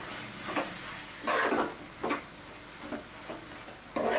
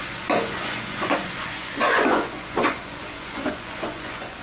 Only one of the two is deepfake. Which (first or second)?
second